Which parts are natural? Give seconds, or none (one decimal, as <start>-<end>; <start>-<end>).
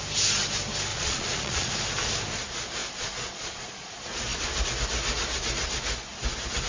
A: 0.0-0.9; 1.7-2.8; 3.9-6.7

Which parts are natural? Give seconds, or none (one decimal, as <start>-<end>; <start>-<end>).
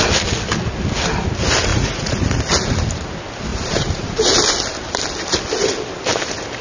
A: 0.0-1.7; 2.4-3.5; 4.4-6.6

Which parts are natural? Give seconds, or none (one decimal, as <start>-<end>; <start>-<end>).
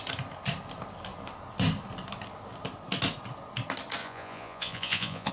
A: 0.0-4.0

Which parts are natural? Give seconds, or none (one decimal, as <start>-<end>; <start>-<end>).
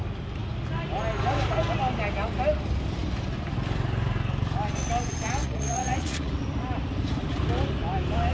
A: 0.0-5.4; 6.3-8.3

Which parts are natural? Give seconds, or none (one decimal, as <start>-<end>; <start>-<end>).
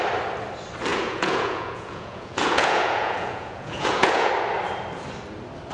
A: 0.0-0.9; 4.3-5.7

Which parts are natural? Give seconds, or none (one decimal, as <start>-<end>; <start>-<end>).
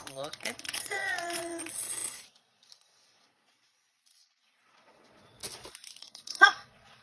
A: 5.4-6.0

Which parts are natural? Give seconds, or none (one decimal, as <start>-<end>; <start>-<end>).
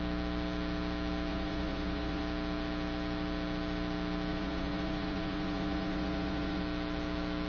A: 0.0-1.3; 2.2-4.3; 6.6-7.5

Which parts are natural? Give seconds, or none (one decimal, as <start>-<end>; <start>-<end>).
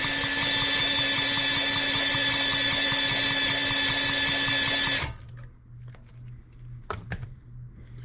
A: 0.0-8.0